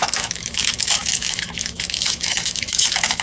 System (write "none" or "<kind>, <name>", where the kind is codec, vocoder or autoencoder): autoencoder, DAC-VAE